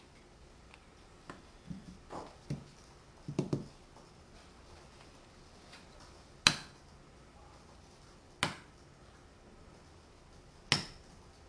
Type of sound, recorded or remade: recorded